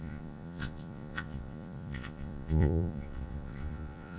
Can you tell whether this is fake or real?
fake